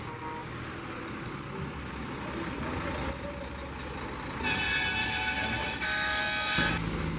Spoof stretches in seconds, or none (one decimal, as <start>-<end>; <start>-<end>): 5.0-6.2